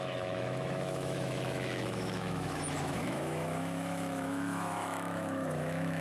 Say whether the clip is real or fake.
fake